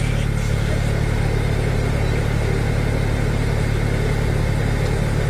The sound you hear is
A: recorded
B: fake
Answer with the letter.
A